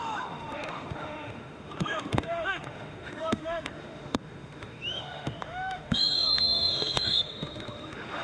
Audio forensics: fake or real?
fake